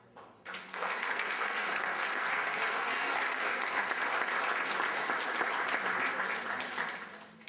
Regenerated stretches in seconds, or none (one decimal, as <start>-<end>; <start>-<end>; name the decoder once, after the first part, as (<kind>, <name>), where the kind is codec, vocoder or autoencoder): 0.7-3.9 (codec, SNAC)